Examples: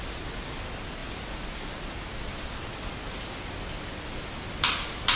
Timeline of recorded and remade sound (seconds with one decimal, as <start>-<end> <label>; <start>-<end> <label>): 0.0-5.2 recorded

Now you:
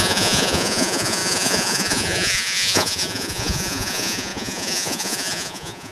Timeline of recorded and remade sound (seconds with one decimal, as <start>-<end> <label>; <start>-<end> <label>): 0.0-5.9 remade

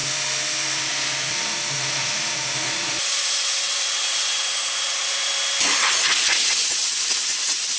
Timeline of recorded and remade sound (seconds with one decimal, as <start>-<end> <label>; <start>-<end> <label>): 0.0-2.0 recorded; 2.0-5.3 remade; 5.3-7.8 recorded

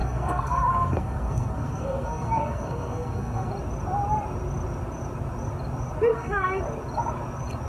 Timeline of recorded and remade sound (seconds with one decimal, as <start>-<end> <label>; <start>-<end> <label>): 0.0-3.5 remade; 3.5-6.1 recorded; 6.1-6.6 remade; 6.6-7.7 recorded